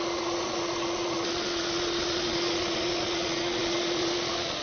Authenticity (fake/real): fake